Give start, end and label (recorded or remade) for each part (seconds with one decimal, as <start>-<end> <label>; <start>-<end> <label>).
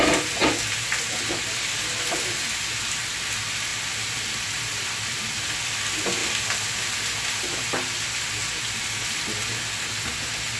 0.0-10.6 recorded